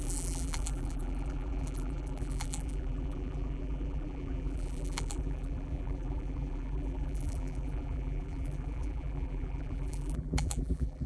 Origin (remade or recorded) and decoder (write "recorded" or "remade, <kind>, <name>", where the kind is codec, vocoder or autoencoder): remade, vocoder, BigVGAN v2